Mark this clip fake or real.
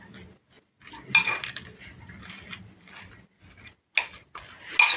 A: real